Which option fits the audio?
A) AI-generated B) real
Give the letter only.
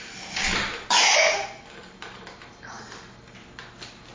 B